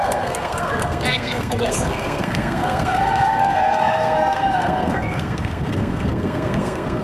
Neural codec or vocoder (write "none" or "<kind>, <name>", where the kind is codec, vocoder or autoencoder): codec, SNAC